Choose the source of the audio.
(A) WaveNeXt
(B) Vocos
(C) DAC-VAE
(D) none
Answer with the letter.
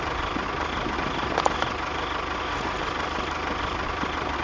D